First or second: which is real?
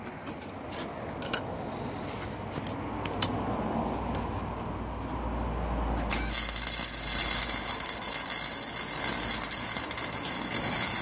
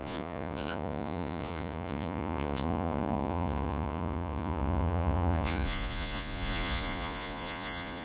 first